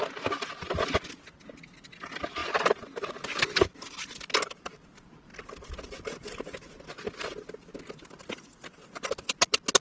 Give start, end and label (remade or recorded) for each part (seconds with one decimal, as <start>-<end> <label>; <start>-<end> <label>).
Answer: 0.0-9.8 recorded